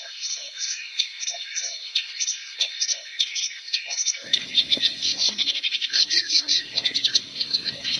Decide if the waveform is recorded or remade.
remade